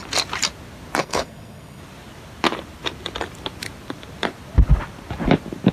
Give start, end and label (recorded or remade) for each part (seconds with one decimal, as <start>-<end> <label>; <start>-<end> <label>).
0.0-1.0 recorded; 1.0-1.8 remade; 1.8-5.7 recorded